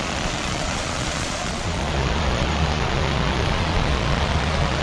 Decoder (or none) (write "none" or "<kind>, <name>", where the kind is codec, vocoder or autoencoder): vocoder, Vocos